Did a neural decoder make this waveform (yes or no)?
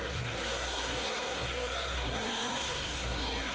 yes